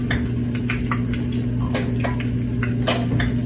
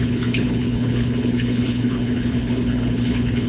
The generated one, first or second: second